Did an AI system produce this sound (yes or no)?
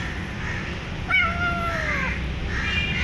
no